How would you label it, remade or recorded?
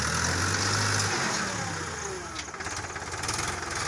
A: recorded